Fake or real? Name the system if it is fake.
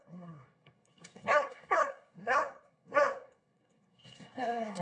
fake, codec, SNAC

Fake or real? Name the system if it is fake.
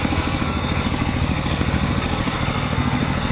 fake, codec, SNAC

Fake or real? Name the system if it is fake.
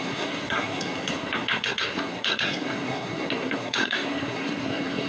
fake, codec, SNAC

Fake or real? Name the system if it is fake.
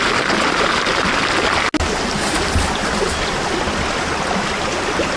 real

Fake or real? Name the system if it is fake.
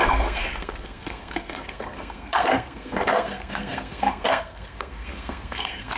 fake, codec, SNAC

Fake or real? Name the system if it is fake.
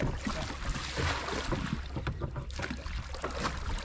real